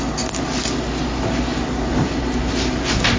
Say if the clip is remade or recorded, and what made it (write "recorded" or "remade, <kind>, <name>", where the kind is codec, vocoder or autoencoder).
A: recorded